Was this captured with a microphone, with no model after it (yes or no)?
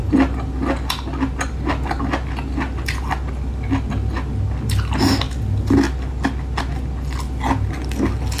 yes